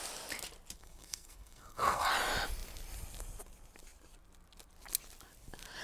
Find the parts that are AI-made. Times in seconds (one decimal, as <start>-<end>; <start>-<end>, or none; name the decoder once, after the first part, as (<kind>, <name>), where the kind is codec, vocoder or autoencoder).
0.8-2.1 (codec, SNAC)